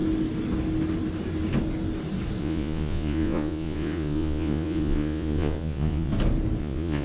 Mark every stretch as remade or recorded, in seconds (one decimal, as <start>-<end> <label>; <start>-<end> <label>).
0.0-2.4 recorded; 2.4-6.1 remade; 6.1-6.6 recorded; 6.6-7.0 remade